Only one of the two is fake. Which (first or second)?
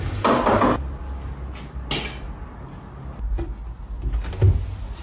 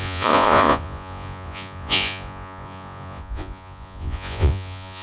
second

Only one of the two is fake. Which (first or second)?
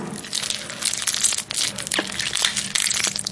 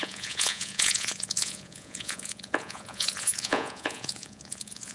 second